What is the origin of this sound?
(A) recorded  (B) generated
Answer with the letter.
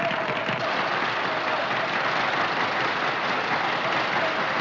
A